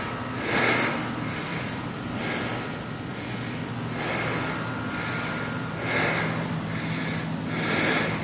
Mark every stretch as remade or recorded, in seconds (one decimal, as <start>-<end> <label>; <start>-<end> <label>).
0.0-1.5 recorded; 1.5-2.2 remade; 2.2-8.2 recorded